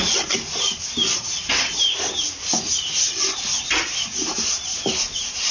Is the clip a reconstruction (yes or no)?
no